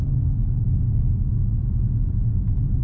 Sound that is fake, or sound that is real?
fake